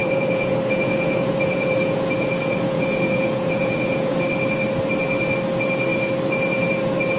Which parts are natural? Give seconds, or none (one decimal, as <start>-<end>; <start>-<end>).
4.3-7.2